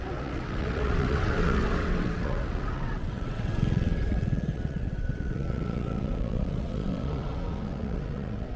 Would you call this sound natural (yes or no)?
no